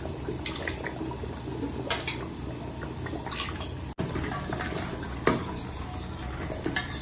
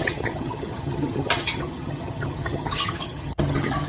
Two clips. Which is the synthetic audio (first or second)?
second